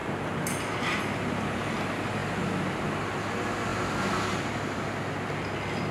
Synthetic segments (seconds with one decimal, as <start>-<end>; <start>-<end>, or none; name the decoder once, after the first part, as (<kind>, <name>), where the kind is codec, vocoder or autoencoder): 0.0-1.0 (vocoder, BigVGAN v2)